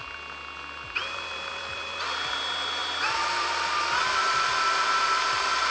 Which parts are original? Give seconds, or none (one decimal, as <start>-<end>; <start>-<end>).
0.0-1.0; 2.3-2.8; 3.7-5.7